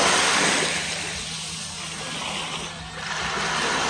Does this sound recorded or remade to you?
recorded